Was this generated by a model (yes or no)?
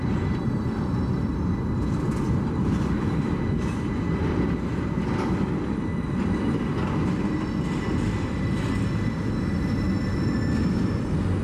no